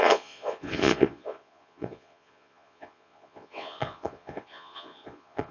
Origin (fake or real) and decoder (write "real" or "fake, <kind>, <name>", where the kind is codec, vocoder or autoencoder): fake, vocoder, Vocos